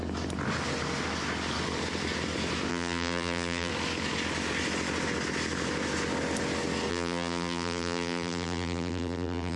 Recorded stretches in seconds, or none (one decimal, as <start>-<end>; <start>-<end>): 0.0-2.7; 3.7-6.9